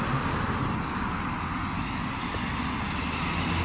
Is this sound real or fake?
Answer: real